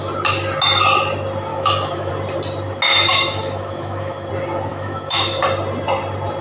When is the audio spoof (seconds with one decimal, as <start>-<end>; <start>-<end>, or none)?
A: 1.5-2.1; 2.9-4.3; 4.7-5.4